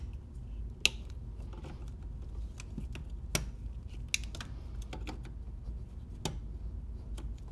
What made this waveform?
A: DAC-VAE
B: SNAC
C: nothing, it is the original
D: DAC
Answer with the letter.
C